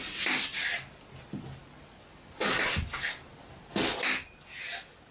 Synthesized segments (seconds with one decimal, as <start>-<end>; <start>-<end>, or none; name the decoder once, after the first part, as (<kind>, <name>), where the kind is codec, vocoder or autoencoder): none